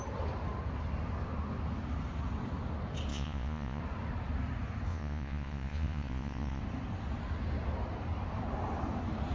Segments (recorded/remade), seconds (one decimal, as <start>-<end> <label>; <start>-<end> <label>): 0.0-3.1 recorded; 3.1-3.8 remade; 3.8-4.9 recorded; 4.9-6.6 remade; 6.6-9.3 recorded